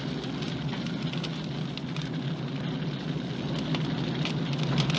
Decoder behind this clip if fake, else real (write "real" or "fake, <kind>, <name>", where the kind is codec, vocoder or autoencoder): real